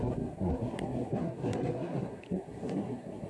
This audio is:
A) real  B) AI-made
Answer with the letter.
B